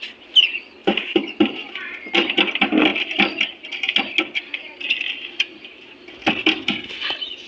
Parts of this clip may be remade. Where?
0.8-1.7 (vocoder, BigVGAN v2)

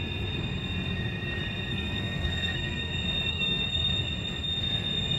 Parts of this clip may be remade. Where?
1.7-2.9 (codec, SNAC); 3.3-3.9

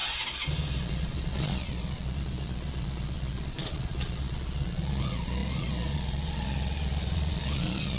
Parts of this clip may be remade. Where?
0.8-8.0 (vocoder, Vocos)

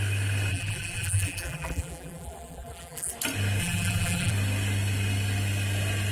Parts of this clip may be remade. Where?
0.5-3.1 (vocoder, BigVGAN v2); 3.6-4.3

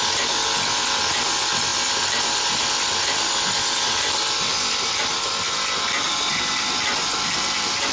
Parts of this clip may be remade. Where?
0.0-7.9 (vocoder, BigVGAN v2)